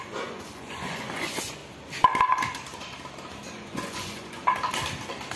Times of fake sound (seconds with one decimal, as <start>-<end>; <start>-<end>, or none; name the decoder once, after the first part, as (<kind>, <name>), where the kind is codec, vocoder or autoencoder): 0.0-1.6 (vocoder, Vocos); 3.5-4.4